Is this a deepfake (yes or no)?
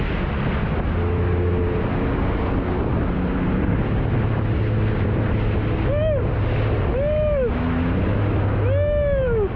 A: no